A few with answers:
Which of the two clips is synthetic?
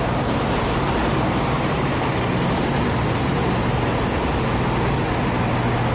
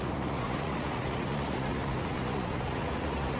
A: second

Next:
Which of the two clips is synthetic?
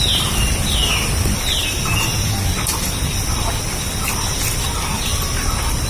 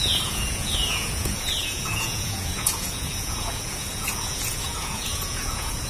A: second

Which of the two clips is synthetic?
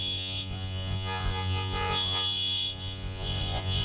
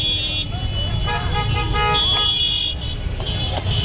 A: first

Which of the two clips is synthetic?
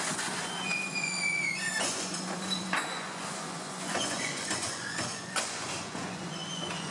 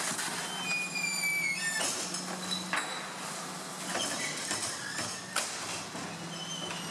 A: first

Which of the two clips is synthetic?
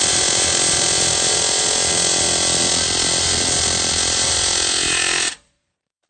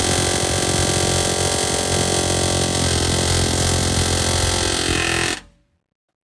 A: first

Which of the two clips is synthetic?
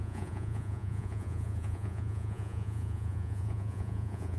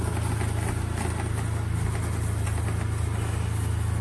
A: first